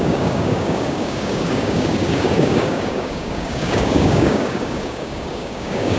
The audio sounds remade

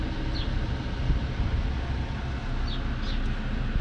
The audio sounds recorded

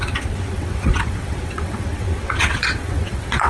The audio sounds remade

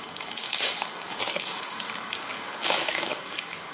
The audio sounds remade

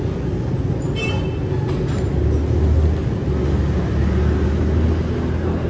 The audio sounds recorded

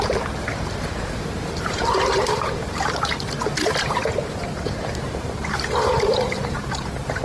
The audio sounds remade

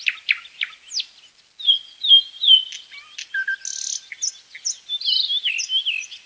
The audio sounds recorded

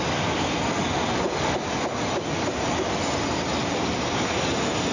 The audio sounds recorded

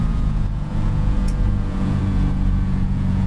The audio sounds remade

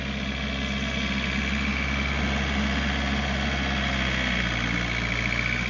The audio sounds recorded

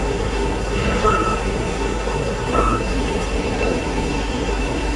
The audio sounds remade